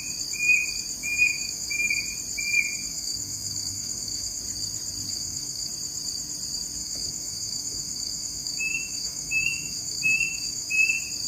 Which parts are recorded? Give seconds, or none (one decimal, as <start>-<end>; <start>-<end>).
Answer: 0.0-1.0; 1.9-2.9; 4.4-5.1; 5.7-6.8; 10.7-11.3